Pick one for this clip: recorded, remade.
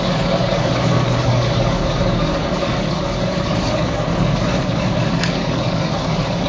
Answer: remade